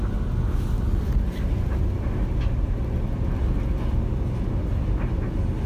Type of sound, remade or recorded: recorded